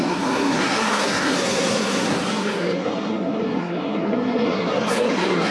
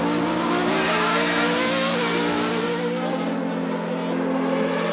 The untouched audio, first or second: second